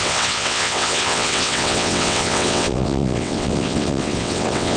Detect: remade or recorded remade